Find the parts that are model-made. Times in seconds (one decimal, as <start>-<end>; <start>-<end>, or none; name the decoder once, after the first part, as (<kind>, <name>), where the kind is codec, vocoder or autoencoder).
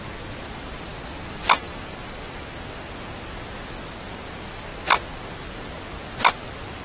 none